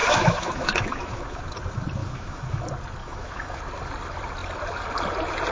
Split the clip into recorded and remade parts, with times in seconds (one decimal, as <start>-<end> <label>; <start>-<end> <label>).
0.0-1.4 remade; 1.4-2.0 recorded; 2.0-2.6 remade; 2.6-3.0 recorded; 3.0-3.6 remade; 3.6-5.5 recorded